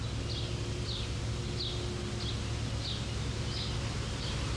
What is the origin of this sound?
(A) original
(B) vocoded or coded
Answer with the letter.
A